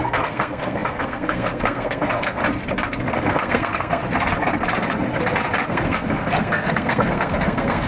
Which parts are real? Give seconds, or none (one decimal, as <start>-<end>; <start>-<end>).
2.4-3.1; 4.0-5.7